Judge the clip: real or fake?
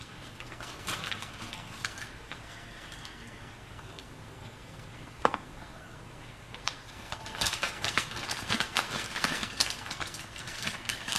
fake